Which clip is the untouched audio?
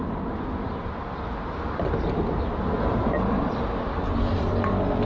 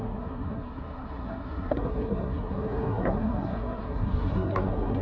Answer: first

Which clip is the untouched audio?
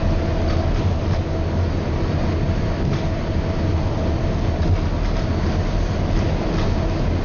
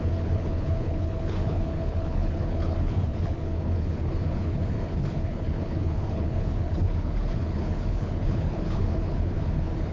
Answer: first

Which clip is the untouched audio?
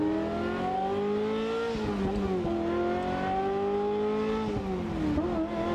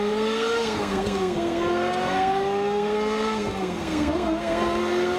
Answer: first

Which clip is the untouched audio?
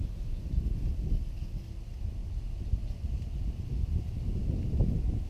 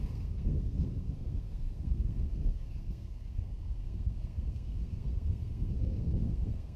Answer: first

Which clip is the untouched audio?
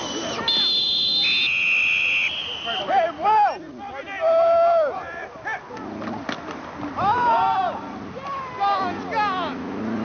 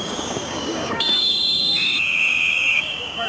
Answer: first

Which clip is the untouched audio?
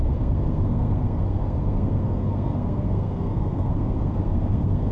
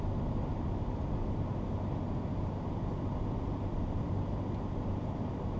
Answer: second